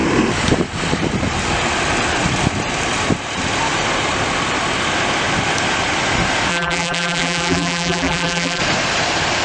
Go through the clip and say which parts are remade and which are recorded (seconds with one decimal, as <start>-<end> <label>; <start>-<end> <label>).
0.0-6.5 recorded; 6.5-8.6 remade; 8.6-9.4 recorded